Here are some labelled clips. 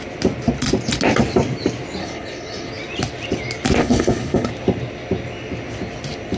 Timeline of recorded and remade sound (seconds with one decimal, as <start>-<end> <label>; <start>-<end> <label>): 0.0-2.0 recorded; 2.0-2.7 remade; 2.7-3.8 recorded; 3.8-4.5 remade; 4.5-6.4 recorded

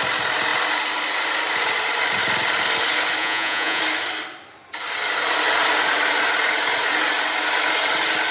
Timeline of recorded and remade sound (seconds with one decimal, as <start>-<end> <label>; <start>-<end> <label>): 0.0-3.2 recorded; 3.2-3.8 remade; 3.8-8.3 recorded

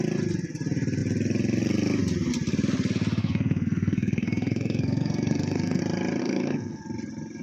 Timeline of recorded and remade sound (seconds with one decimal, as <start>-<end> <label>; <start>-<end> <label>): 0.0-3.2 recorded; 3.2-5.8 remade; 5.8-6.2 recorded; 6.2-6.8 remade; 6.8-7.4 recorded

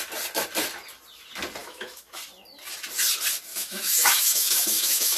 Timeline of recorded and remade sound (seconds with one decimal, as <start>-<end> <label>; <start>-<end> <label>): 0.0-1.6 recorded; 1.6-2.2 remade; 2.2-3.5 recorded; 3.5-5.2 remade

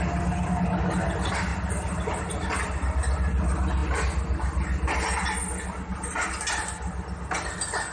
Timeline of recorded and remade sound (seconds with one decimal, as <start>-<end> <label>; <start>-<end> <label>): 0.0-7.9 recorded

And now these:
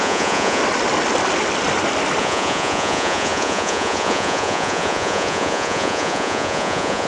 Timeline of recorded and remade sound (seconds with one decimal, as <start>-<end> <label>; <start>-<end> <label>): 0.0-0.6 remade; 0.6-2.2 recorded; 2.2-7.1 remade

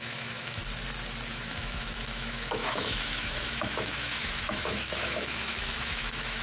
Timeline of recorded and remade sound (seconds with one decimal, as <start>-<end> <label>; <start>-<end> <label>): 0.0-0.6 remade; 0.6-1.3 recorded; 1.3-6.4 remade